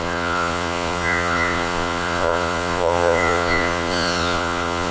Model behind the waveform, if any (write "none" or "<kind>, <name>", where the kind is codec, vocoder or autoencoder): vocoder, Vocos